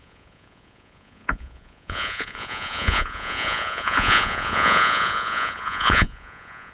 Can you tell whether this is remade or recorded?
remade